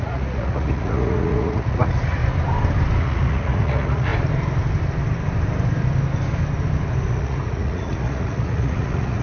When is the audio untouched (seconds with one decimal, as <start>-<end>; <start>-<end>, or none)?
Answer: 2.2-3.0; 4.1-7.1